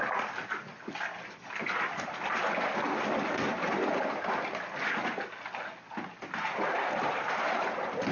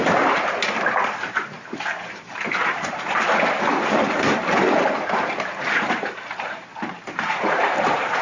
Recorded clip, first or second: first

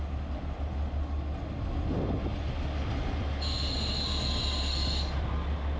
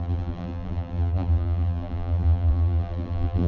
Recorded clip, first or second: first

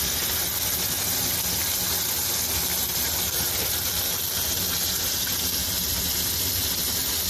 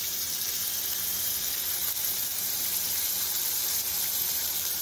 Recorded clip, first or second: first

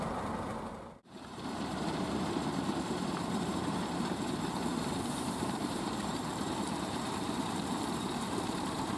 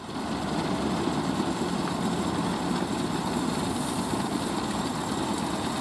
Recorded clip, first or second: second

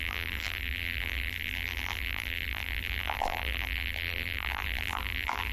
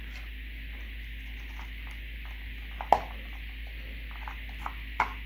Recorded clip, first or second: second